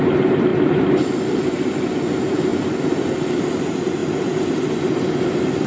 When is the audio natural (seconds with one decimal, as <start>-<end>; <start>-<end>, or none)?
0.0-4.0; 4.5-5.7